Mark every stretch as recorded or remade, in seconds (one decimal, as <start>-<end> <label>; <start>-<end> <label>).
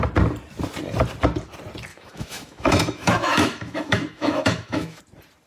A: 0.0-1.9 recorded; 1.9-5.0 remade; 5.0-5.5 recorded